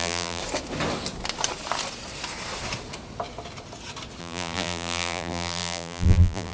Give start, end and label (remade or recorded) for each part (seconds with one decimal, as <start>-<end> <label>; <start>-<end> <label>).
0.0-0.4 remade; 0.4-4.2 recorded; 4.2-6.5 remade

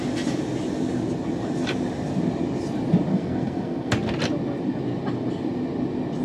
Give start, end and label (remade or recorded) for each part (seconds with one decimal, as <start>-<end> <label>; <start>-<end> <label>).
0.0-3.1 recorded; 3.1-3.9 remade; 3.9-6.2 recorded

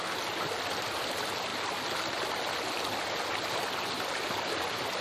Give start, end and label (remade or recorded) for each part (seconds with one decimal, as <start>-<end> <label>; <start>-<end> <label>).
0.0-5.0 recorded

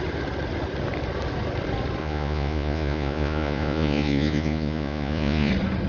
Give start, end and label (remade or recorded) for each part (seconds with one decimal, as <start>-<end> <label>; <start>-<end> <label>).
0.0-2.0 recorded; 2.0-5.5 remade; 5.5-5.9 recorded

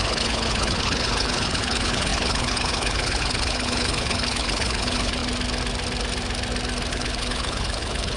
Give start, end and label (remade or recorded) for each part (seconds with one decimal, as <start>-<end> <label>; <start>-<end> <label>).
0.0-5.2 remade; 5.2-6.9 recorded; 6.9-8.2 remade

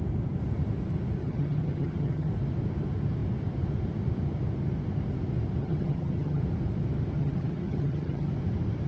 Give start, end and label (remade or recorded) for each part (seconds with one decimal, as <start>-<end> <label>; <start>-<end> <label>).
0.0-1.2 recorded; 1.2-2.3 remade; 2.3-5.6 recorded; 5.6-6.4 remade; 6.4-7.2 recorded; 7.2-8.3 remade; 8.3-8.9 recorded

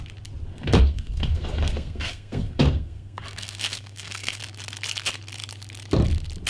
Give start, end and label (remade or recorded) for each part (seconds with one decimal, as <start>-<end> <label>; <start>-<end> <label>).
0.0-0.5 recorded; 0.5-4.4 remade; 4.4-6.5 recorded